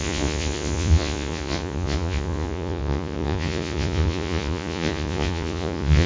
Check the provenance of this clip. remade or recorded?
remade